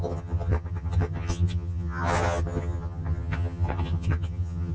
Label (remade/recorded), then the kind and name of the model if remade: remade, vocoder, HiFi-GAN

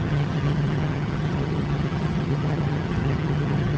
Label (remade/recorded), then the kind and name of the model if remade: remade, vocoder, HiFi-GAN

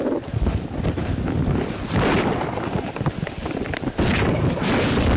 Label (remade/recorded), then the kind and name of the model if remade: recorded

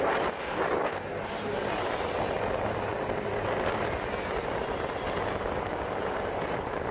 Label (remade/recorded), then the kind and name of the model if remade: recorded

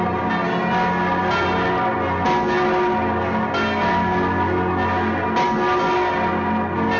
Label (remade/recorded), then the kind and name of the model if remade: recorded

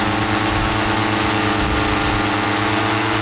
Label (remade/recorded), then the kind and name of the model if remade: recorded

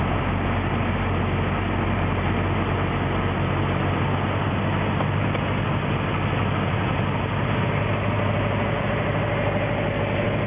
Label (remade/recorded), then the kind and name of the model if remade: recorded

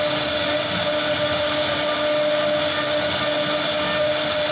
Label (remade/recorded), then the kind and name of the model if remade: recorded